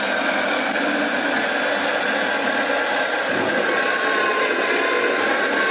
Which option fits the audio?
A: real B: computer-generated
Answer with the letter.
A